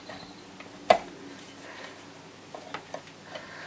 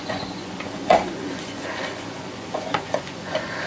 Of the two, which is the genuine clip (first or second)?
first